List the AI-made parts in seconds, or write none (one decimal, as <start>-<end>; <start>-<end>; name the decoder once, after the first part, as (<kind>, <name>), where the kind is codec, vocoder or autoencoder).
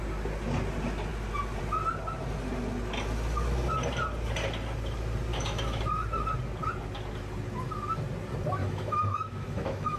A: 5.3-5.8 (autoencoder, DAC-VAE); 8.6-10.0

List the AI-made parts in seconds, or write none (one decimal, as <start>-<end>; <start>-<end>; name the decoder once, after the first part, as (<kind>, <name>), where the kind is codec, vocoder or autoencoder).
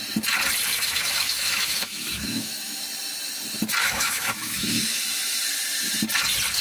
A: 0.7-2.8 (autoencoder, DAC-VAE); 3.8-5.0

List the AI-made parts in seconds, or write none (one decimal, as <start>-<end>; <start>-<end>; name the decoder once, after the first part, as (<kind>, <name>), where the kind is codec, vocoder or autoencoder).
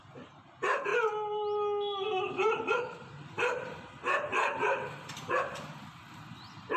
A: 0.0-0.9 (vocoder, BigVGAN v2); 2.7-6.8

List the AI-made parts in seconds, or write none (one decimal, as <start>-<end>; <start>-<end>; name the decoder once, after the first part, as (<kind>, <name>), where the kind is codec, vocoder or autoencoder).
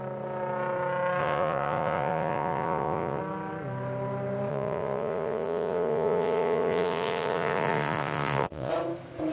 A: 1.2-3.2 (vocoder, Vocos); 4.5-8.7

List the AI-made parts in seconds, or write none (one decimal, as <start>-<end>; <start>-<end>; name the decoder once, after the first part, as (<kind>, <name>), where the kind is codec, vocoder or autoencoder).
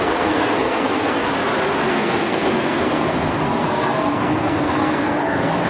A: 0.0-1.2 (codec, SNAC); 1.9-5.7